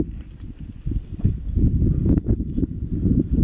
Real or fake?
real